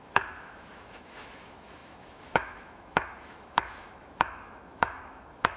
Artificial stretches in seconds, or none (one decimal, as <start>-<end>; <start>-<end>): 0.0-5.6